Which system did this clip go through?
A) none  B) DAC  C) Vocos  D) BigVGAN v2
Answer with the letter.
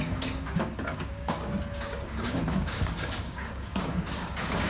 B